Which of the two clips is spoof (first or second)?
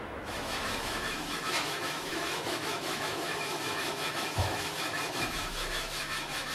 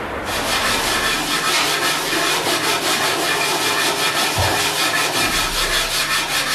first